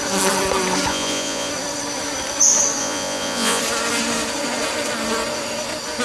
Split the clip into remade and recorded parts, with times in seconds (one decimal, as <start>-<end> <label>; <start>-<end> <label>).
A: 0.0-0.9 recorded; 0.9-1.5 remade; 1.5-2.8 recorded; 2.8-3.6 remade; 3.6-6.0 recorded